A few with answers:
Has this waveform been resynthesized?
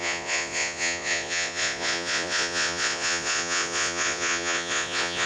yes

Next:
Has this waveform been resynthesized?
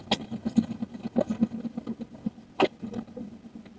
no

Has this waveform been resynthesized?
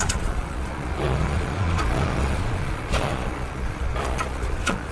yes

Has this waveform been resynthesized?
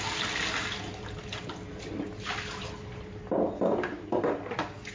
no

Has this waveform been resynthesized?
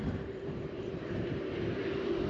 yes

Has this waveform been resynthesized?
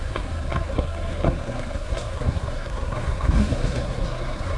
yes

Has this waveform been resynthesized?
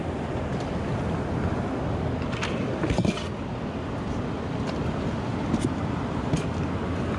no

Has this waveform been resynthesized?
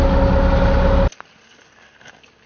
no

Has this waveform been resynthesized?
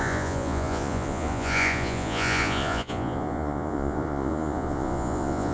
yes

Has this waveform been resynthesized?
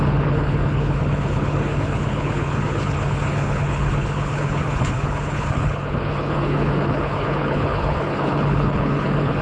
yes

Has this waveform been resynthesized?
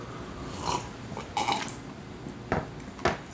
no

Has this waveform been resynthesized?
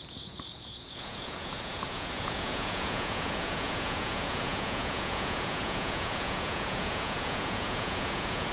yes